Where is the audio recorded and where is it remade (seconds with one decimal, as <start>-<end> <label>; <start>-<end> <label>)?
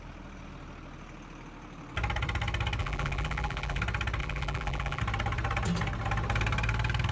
0.0-2.8 recorded; 2.8-3.8 remade; 3.8-4.2 recorded; 4.2-5.0 remade; 5.0-7.1 recorded